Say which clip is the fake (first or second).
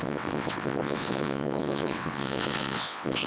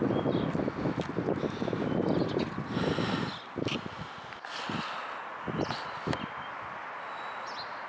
first